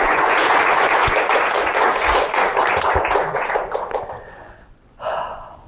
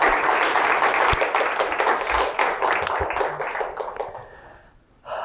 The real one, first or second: second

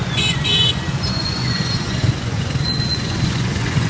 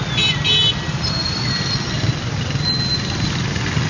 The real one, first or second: second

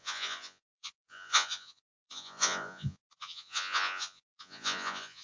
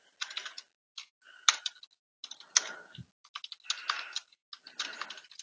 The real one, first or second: second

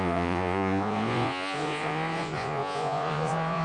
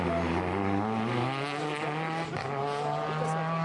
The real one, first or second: second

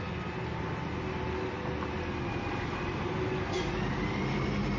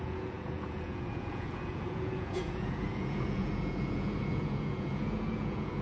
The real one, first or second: first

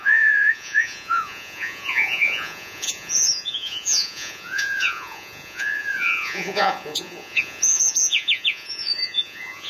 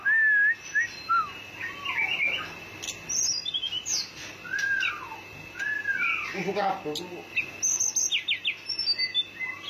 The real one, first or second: second